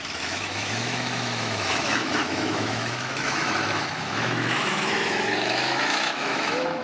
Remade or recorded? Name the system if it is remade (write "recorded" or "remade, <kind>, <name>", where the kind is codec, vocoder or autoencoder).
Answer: remade, autoencoder, DAC-VAE